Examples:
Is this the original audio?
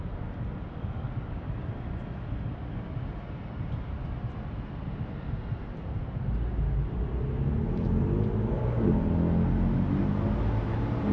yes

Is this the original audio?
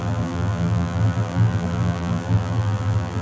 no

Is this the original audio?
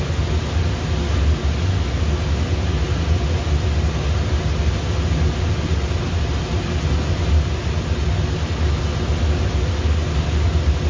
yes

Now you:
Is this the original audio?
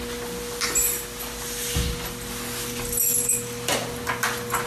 yes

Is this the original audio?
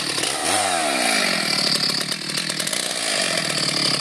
yes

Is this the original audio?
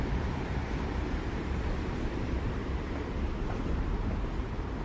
no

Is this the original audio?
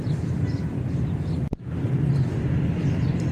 no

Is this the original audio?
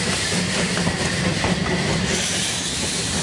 no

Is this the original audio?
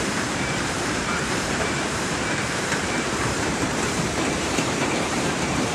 no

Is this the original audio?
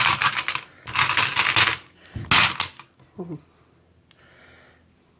yes